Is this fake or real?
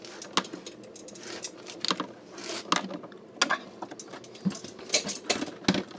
real